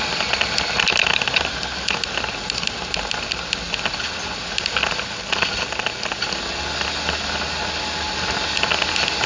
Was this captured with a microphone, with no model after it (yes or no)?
yes